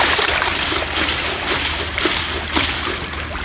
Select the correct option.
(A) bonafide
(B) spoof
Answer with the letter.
A